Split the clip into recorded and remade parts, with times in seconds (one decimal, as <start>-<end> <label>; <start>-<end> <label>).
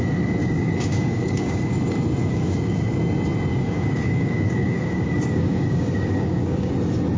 0.0-0.4 recorded; 0.4-1.7 remade; 1.7-2.2 recorded; 2.2-3.0 remade; 3.0-3.5 recorded; 3.5-6.7 remade; 6.7-7.2 recorded